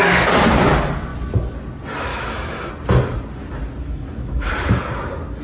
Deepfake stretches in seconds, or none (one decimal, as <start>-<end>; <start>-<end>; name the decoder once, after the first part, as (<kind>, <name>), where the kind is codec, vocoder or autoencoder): 2.1-2.7 (autoencoder, DAC-VAE); 3.8-4.5